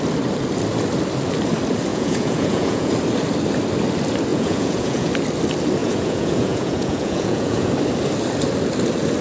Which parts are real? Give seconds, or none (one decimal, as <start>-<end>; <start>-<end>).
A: 0.0-1.9; 2.9-4.3; 5.1-5.8; 7.7-9.2